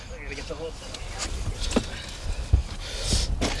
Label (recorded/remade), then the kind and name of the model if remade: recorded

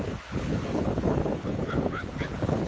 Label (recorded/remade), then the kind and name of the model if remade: remade, codec, HILCodec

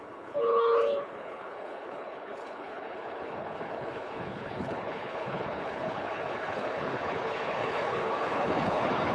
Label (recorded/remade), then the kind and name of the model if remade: remade, codec, HILCodec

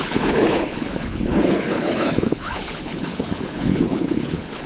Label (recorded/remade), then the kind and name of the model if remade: remade, codec, HILCodec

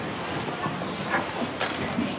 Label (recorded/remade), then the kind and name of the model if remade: recorded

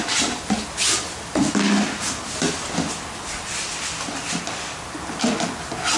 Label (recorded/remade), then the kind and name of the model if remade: recorded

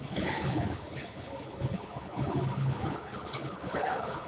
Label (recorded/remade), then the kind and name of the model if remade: remade, codec, HILCodec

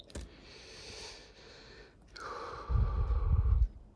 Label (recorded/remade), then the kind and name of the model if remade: recorded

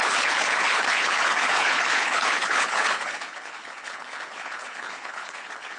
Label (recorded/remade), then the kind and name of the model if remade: remade, codec, HILCodec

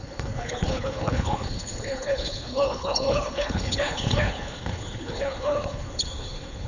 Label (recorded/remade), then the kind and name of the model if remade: remade, codec, HILCodec